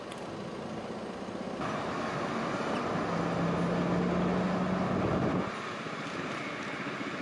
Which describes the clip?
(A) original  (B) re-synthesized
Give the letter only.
A